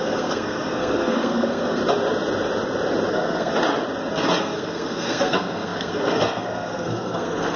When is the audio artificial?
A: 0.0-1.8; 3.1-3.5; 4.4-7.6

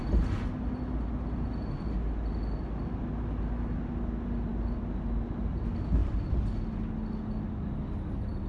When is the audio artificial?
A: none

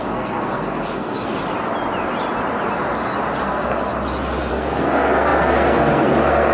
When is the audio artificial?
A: 0.0-1.3; 3.4-3.9; 4.5-6.5

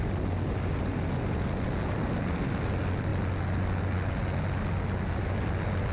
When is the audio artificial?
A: none

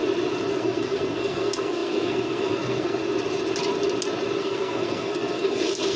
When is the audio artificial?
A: 0.5-3.0; 4.4-6.0